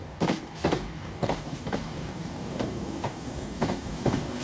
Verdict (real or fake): fake